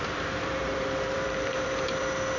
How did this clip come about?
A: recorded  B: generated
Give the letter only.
B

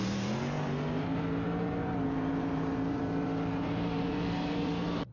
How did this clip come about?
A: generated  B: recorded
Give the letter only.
A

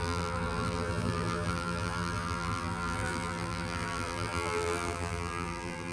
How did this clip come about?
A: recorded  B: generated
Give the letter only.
B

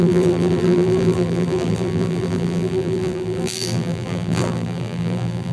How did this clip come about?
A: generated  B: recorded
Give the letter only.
A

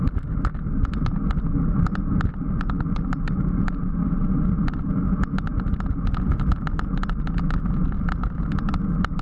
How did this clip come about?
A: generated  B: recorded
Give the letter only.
B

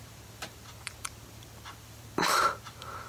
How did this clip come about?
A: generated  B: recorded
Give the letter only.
A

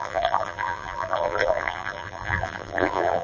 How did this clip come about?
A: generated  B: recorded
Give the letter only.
A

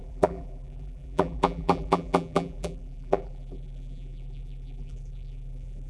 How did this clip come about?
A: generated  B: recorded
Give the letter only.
A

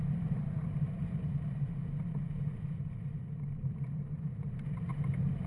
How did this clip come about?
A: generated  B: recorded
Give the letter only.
A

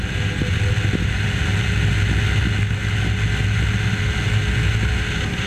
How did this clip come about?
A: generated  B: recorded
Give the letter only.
B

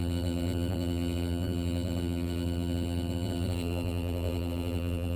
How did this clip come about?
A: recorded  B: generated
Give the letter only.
B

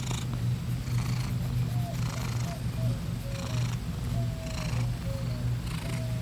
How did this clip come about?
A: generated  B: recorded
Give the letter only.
B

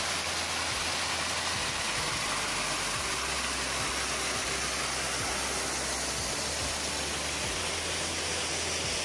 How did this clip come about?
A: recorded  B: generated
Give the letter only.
A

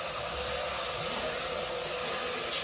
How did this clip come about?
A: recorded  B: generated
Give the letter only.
A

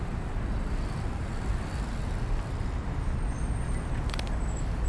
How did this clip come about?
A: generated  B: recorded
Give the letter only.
B